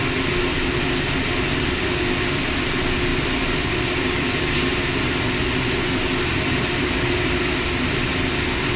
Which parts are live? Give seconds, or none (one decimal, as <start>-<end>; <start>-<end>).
0.0-8.8